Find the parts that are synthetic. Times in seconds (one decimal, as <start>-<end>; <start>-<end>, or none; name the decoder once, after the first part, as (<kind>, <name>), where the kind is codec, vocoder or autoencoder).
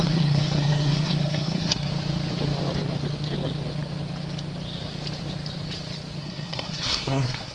0.0-1.9 (codec, SNAC); 6.2-7.5